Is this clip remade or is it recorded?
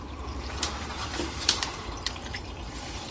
remade